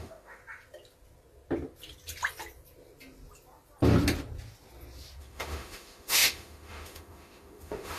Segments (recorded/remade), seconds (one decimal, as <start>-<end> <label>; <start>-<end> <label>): 0.0-0.4 remade; 0.4-5.2 recorded; 5.2-8.0 remade

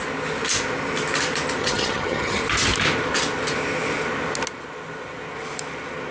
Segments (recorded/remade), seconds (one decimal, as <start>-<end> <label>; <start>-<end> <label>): 0.0-1.6 recorded; 1.6-2.4 remade; 2.4-6.1 recorded

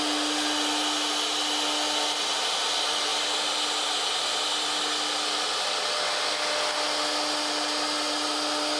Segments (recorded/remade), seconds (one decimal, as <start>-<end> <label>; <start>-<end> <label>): 0.0-8.8 recorded

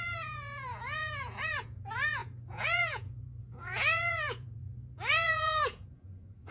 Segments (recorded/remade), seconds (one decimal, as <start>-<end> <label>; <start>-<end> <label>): 0.0-6.5 remade

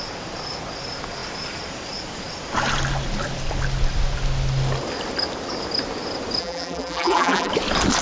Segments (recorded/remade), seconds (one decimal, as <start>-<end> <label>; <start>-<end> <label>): 0.0-6.4 recorded; 6.4-7.5 remade; 7.5-8.0 recorded